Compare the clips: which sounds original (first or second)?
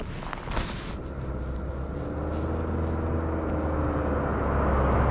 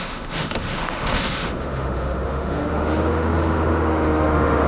first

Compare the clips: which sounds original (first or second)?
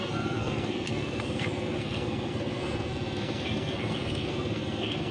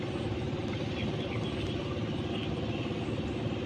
second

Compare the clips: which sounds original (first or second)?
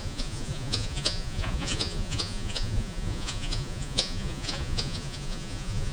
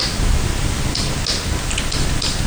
second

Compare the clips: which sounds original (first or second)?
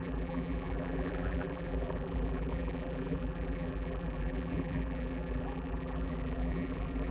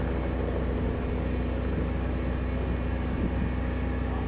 second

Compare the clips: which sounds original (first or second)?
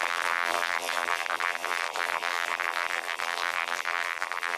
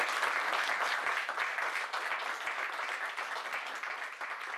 second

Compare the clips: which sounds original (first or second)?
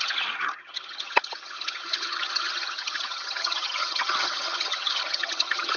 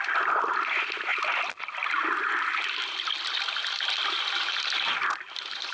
second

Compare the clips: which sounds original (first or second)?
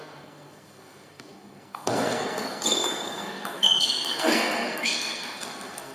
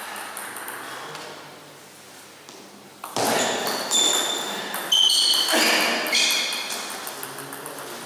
second